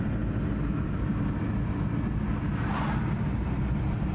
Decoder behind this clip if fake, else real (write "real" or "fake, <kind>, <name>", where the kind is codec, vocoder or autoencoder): real